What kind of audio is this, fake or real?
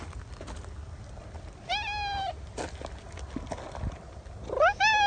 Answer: real